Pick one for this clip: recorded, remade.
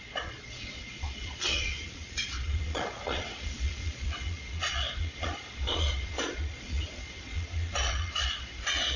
remade